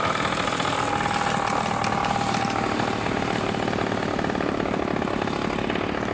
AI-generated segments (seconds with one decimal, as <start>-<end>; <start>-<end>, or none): 2.0-4.8